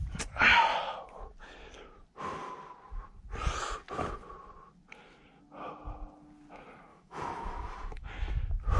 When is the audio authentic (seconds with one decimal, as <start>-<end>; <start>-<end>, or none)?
0.0-6.9; 8.1-8.8